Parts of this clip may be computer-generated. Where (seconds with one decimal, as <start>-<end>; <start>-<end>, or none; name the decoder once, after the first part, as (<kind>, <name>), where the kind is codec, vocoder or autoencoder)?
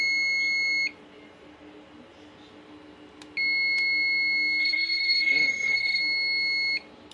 4.6-6.0 (codec, SNAC)